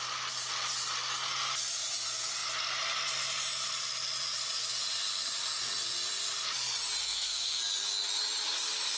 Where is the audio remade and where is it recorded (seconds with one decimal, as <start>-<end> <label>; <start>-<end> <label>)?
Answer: 0.0-7.0 recorded; 7.0-7.6 remade; 7.6-9.0 recorded